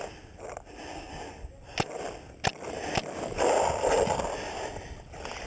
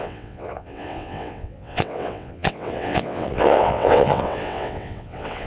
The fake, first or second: second